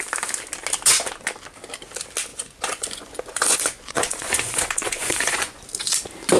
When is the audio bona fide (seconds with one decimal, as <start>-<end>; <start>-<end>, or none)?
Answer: 0.0-2.3; 5.6-6.4